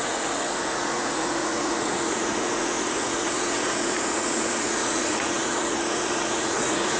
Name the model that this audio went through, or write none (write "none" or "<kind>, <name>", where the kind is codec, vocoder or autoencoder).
vocoder, Vocos